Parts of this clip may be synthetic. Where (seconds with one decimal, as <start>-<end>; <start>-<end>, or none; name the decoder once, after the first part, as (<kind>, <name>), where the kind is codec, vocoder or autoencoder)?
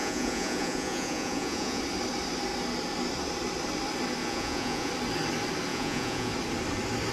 0.0-1.8 (vocoder, Vocos); 4.2-4.9; 5.7-6.3